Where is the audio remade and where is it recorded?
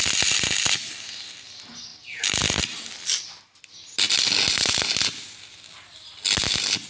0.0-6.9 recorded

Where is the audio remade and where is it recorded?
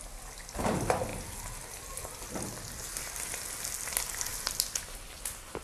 0.0-4.3 recorded; 4.3-5.6 remade